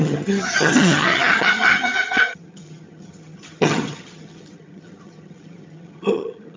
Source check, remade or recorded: remade